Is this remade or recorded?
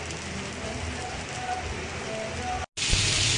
recorded